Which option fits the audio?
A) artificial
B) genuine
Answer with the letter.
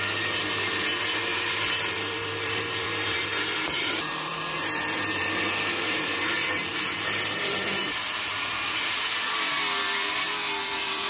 A